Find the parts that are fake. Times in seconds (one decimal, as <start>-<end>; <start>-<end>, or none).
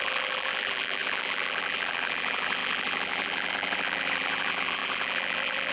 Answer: 0.0-5.7